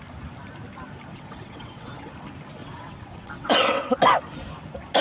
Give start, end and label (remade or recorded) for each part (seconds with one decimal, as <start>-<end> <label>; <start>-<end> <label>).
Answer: 0.0-1.1 recorded; 1.1-2.1 remade; 2.1-2.6 recorded; 2.6-4.0 remade; 4.0-5.0 recorded

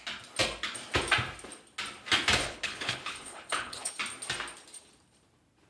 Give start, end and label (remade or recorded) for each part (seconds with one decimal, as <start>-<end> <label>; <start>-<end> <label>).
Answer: 0.0-2.4 recorded; 2.4-3.9 remade; 3.9-5.7 recorded

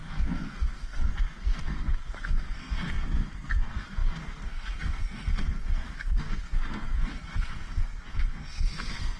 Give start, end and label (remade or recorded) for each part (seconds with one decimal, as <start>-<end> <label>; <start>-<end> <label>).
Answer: 0.0-9.2 remade